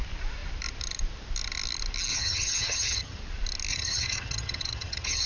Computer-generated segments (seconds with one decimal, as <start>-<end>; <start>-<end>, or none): 2.1-3.2; 3.7-5.3

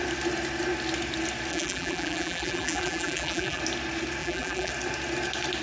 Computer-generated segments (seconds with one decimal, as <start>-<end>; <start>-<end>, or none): 1.5-3.6; 4.2-4.7